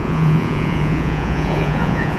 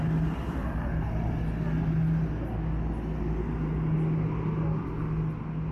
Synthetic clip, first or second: first